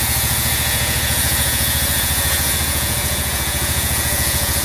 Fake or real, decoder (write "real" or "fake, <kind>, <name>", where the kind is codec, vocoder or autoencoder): fake, vocoder, Vocos